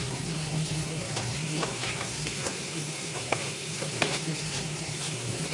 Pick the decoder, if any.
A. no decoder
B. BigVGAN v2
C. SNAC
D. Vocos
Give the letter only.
C